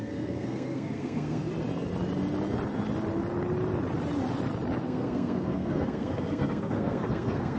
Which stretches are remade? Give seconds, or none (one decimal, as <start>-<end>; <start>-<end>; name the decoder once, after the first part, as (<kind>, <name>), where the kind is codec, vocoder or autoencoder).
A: 0.0-1.5 (codec, SNAC); 4.8-7.6